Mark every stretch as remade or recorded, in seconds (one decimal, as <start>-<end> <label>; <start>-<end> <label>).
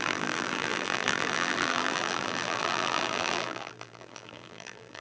0.0-5.0 remade